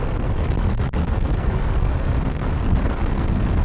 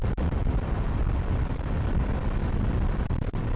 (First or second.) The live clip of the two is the second